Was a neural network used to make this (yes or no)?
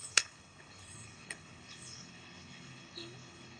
yes